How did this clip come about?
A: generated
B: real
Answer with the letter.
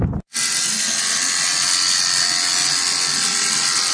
B